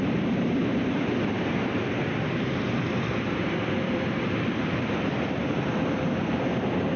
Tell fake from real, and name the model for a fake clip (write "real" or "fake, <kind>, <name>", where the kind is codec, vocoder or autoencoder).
fake, vocoder, BigVGAN v2